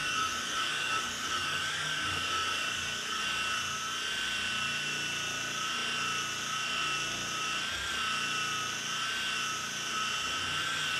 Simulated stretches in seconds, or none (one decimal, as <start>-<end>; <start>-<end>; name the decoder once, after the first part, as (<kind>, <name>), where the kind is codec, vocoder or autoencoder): 0.0-3.2 (codec, DAC)